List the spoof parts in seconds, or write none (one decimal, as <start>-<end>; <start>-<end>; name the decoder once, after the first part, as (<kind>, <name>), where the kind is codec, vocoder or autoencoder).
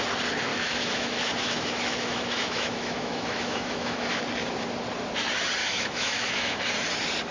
0.5-4.2 (autoencoder, DAC-VAE); 5.6-6.6